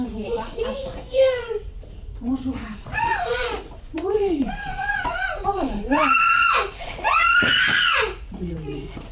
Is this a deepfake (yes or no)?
yes